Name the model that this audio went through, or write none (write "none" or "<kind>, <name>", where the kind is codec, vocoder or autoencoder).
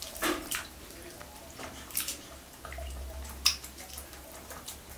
vocoder, BigVGAN v2